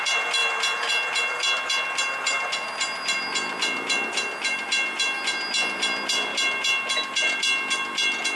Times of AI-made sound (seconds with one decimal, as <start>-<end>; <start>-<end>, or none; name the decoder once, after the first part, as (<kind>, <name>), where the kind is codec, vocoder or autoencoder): none